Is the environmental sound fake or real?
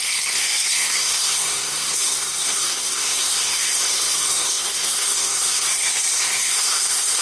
fake